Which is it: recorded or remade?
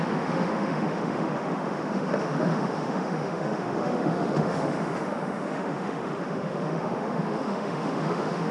remade